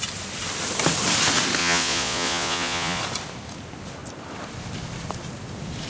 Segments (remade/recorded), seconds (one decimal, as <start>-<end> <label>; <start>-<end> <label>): 0.0-1.6 recorded; 1.6-3.0 remade; 3.0-5.9 recorded